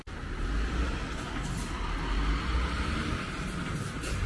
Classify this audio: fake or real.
real